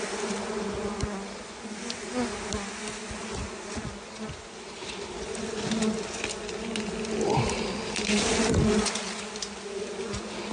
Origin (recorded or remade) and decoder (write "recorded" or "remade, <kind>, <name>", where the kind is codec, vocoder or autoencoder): recorded